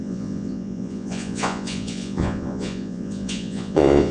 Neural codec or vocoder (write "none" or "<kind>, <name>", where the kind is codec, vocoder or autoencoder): vocoder, Vocos